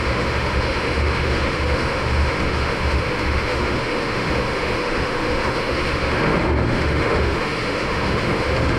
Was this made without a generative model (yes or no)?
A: no